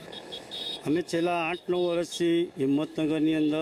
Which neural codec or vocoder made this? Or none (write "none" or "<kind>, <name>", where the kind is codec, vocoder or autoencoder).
autoencoder, DAC-VAE